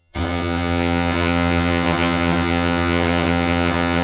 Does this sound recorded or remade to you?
remade